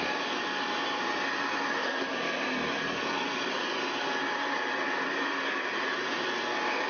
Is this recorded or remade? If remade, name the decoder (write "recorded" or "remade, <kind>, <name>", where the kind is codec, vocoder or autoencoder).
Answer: recorded